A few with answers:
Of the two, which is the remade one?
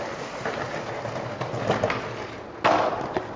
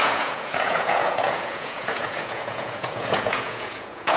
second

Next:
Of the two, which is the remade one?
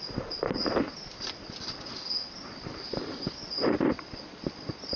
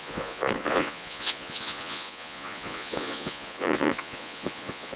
second